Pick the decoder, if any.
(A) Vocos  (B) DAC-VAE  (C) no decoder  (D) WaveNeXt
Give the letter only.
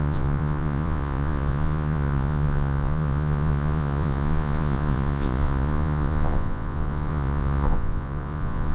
A